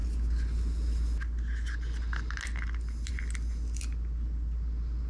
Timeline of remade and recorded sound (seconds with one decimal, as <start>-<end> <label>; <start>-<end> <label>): 0.0-5.1 recorded